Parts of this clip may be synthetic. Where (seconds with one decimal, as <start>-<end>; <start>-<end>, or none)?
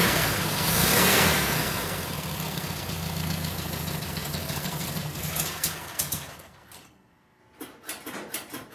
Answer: 0.0-7.4